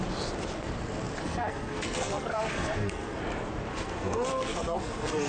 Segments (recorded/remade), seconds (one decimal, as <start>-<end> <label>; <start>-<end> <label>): 0.0-1.2 recorded; 1.2-3.2 remade; 3.2-3.7 recorded; 3.7-5.3 remade